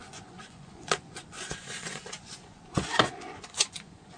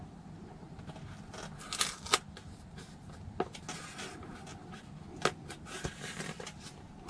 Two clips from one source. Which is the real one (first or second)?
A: second